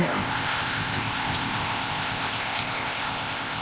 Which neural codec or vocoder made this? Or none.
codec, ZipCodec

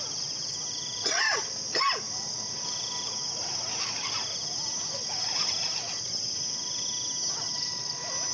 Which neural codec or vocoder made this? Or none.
none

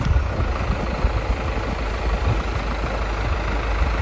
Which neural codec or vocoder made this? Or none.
none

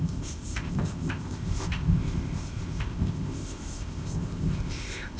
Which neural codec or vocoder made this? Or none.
codec, ZipCodec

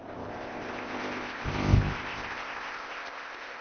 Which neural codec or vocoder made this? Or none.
codec, ZipCodec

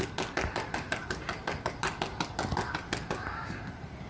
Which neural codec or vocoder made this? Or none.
none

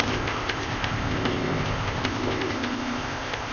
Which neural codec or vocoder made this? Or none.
codec, ZipCodec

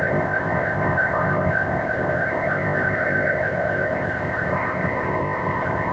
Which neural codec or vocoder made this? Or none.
codec, ZipCodec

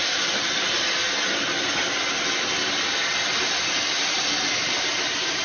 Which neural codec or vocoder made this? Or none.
none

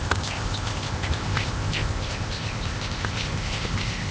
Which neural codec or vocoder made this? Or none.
codec, ZipCodec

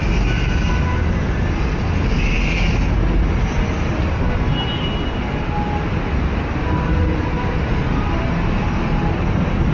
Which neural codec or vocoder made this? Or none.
none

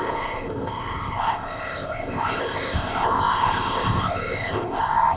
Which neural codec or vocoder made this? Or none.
codec, ZipCodec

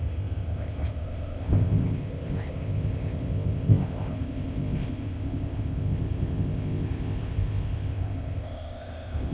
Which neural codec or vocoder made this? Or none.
codec, ZipCodec